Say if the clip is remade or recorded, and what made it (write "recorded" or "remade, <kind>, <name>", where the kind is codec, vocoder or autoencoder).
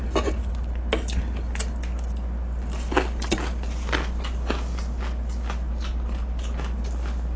recorded